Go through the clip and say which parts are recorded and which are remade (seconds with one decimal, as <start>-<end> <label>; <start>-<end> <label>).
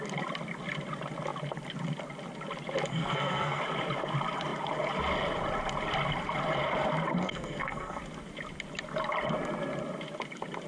0.0-2.9 recorded; 2.9-3.6 remade; 3.6-7.2 recorded; 7.2-8.0 remade; 8.0-10.7 recorded